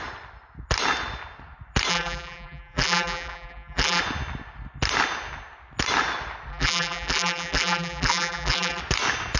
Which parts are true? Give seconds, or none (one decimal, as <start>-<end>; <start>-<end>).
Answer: 0.0-1.9; 4.0-6.5; 8.8-9.4